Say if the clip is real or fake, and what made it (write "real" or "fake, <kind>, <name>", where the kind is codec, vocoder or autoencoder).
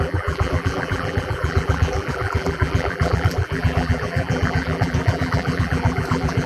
fake, vocoder, BigVGAN v2